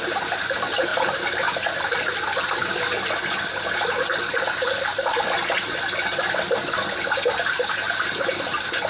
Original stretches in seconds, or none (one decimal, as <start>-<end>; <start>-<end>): 0.0-0.9; 2.5-4.9; 6.0-8.9